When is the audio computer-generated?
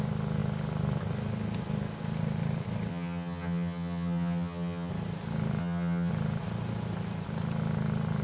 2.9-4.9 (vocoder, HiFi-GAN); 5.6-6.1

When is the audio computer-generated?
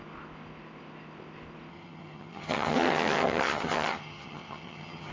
1.7-5.1 (vocoder, HiFi-GAN)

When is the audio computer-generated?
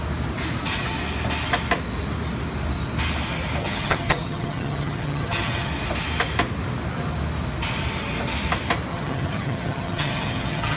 3.6-5.7 (vocoder, HiFi-GAN); 8.9-10.8